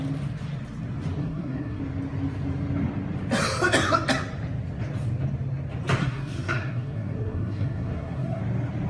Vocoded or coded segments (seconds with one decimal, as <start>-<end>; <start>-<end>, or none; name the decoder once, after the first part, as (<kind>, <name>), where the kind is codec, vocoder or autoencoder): 1.2-1.8 (codec, SNAC); 6.0-8.4